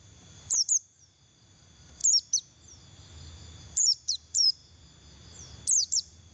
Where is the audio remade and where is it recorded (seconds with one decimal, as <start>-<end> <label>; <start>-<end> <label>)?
0.0-2.0 remade; 2.0-3.6 recorded; 3.6-4.6 remade; 4.6-5.8 recorded; 5.8-6.3 remade